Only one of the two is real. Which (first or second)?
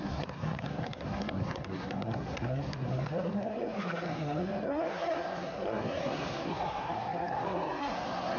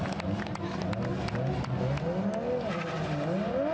second